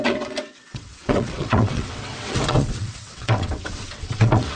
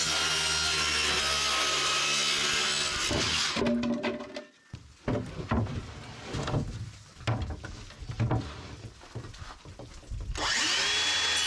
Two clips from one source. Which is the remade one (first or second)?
first